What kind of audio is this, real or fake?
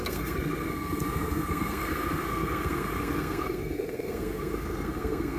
fake